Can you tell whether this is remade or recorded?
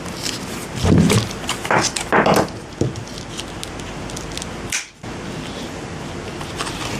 recorded